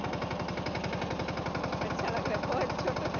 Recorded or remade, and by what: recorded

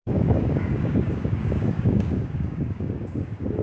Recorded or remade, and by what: remade, codec, DAC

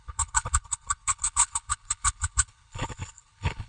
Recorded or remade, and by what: remade, codec, HILCodec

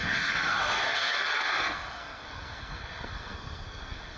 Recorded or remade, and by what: remade, codec, SNAC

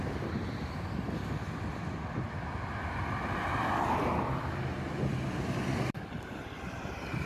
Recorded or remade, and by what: remade, vocoder, BigVGAN v2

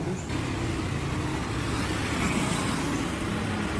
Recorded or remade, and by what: recorded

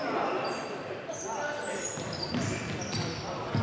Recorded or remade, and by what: recorded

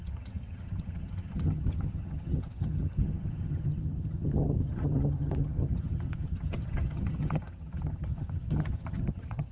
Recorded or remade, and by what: remade, vocoder, HiFi-GAN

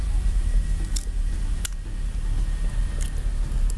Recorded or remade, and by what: recorded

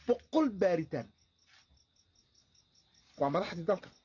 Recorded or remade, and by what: recorded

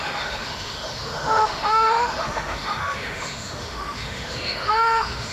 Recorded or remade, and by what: remade, autoencoder, DAC-VAE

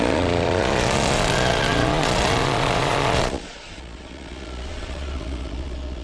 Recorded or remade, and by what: remade, vocoder, Vocos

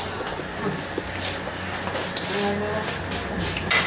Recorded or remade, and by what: recorded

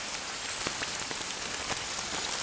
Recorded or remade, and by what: recorded